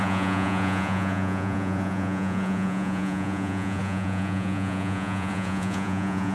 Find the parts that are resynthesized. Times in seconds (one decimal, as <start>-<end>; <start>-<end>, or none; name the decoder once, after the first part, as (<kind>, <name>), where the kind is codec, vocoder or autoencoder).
0.0-6.3 (vocoder, Vocos)